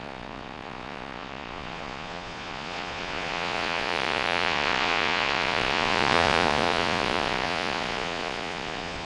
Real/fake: fake